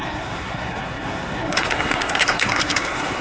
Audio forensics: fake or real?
fake